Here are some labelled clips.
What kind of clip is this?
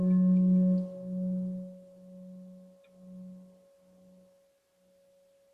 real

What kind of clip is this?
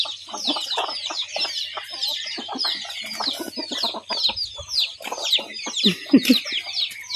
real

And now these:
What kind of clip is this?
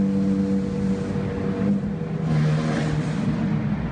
real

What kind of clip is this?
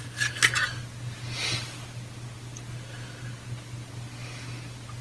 fake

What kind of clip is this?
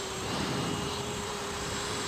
fake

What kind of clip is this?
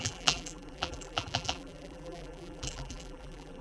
fake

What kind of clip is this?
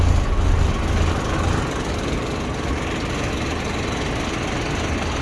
real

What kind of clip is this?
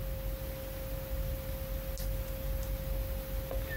real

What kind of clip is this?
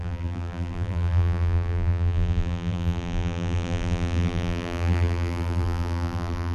fake